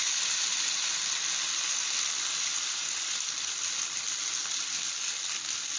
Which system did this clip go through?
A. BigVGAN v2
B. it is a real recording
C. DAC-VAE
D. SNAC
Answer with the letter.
B